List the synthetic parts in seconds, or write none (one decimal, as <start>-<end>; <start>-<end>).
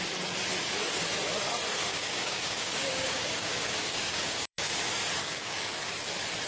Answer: 1.9-4.8; 5.2-5.8